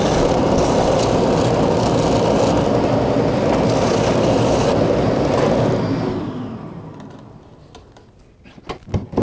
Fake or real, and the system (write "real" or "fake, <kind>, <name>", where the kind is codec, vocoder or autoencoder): real